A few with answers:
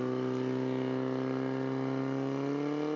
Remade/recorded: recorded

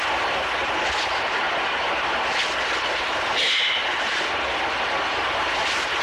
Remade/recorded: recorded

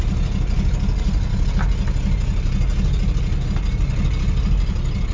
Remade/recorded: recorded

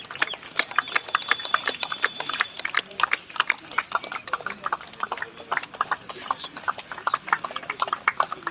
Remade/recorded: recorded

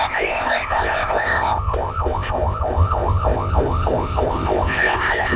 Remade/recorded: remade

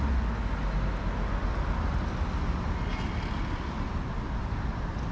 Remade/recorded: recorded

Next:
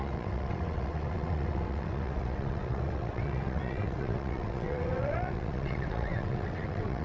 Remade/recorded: remade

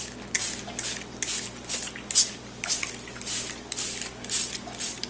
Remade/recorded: recorded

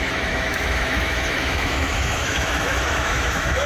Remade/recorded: remade